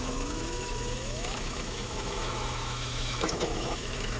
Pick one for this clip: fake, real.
fake